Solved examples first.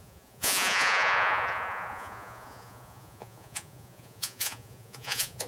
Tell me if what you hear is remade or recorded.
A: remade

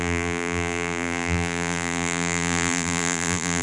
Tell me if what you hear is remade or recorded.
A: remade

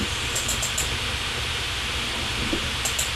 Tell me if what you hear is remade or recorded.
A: recorded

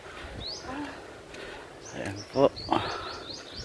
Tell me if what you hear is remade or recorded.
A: recorded